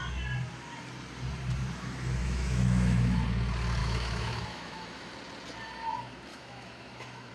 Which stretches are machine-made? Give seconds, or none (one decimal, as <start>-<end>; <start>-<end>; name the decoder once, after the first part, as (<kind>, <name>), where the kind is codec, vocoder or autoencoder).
2.2-3.2 (autoencoder, DAC-VAE); 3.8-5.1; 6.3-7.3